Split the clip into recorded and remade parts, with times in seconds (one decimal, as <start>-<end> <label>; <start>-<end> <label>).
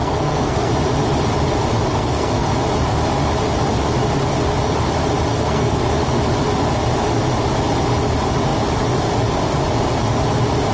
0.0-0.7 remade; 0.7-1.9 recorded; 1.9-2.5 remade; 2.5-5.3 recorded; 5.3-5.8 remade; 5.8-10.7 recorded